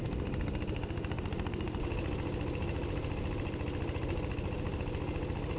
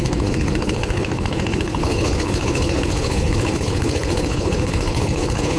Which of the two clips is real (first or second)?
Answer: first